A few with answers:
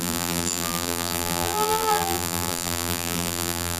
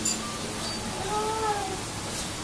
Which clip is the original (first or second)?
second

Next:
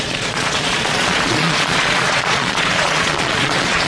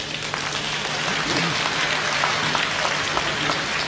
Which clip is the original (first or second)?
second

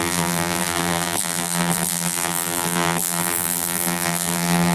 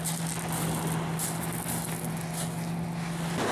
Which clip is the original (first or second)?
second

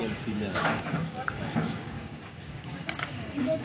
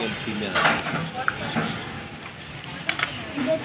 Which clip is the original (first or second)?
second